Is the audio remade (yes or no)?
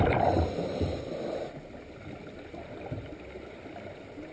no